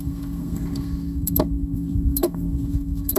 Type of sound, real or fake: fake